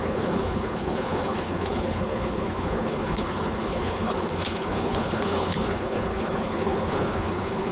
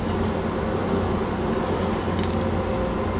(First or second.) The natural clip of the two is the second